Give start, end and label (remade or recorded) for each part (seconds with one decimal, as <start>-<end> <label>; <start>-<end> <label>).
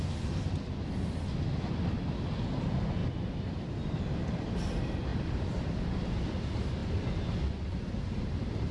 0.0-3.0 recorded; 3.0-4.0 remade; 4.0-5.1 recorded; 5.1-5.9 remade; 5.9-8.7 recorded